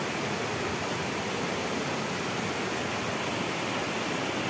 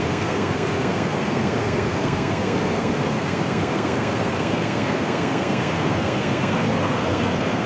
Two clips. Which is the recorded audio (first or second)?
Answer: first